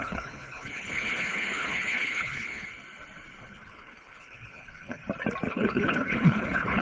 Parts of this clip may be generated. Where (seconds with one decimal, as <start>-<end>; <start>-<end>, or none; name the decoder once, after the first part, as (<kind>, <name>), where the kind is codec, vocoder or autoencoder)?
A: 0.0-2.7 (codec, HILCodec); 3.4-5.0; 5.5-6.8